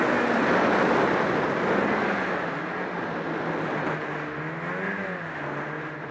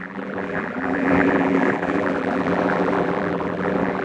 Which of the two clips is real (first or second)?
first